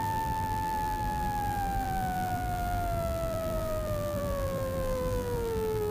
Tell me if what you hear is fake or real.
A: fake